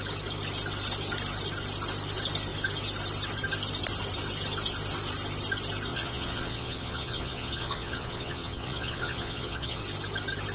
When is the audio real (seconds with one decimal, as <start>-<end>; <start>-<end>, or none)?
0.0-5.9; 9.8-10.5